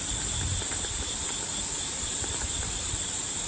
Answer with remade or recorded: recorded